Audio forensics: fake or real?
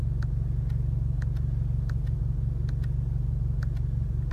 real